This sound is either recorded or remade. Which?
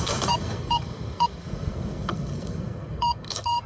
remade